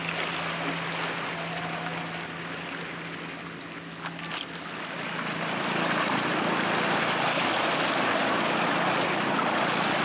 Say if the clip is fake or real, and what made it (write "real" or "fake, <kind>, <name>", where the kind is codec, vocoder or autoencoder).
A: real